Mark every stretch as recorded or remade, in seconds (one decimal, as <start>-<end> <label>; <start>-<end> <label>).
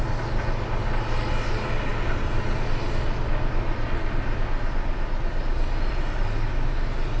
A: 0.0-7.2 recorded